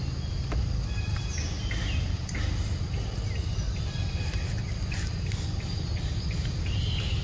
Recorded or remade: recorded